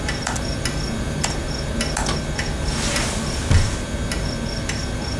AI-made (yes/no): no